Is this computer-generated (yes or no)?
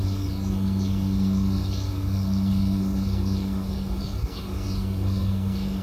yes